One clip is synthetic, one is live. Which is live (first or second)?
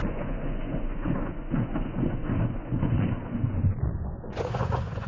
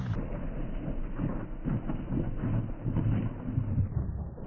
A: second